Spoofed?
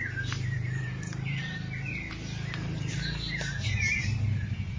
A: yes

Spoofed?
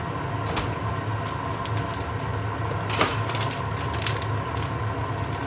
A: no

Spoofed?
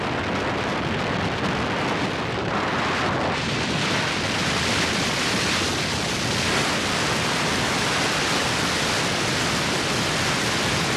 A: no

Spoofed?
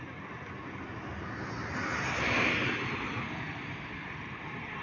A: no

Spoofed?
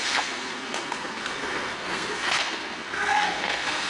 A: yes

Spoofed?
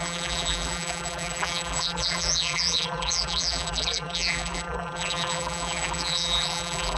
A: yes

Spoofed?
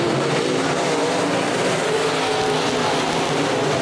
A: no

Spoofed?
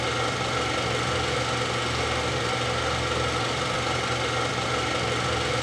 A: no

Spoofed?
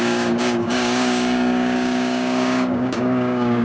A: yes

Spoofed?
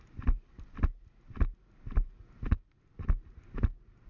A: no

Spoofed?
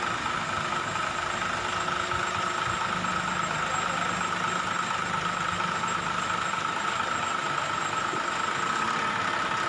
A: no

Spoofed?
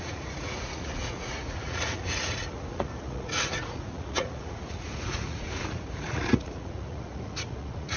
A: yes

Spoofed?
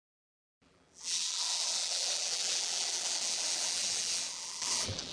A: yes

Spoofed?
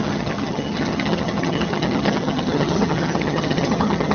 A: yes